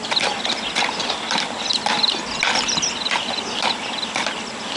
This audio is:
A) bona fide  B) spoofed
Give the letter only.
A